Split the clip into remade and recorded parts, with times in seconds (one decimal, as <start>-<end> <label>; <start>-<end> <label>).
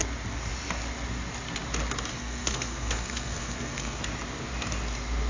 0.0-2.1 recorded; 2.1-4.0 remade; 4.0-5.3 recorded